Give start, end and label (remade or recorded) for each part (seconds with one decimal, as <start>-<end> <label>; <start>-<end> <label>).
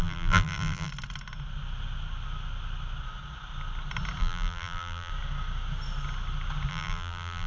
0.0-0.9 remade; 0.9-4.2 recorded; 4.2-5.1 remade; 5.1-6.7 recorded; 6.7-7.5 remade